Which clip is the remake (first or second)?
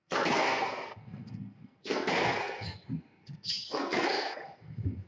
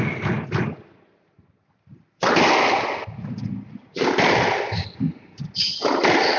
first